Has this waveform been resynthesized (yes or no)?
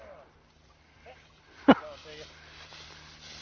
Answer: no